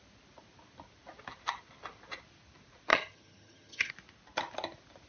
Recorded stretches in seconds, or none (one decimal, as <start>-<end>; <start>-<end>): 0.0-2.9; 3.9-5.1

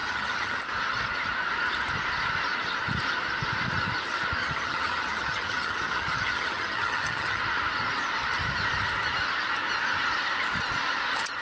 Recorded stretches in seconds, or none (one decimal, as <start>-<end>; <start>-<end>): 0.6-4.4; 7.4-11.4

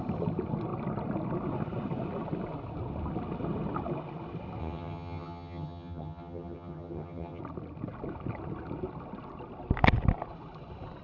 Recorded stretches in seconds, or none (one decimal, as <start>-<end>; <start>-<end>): 0.0-4.6; 7.4-11.0